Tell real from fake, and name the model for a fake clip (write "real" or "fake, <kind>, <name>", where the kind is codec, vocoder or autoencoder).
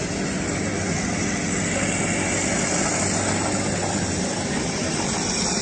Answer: real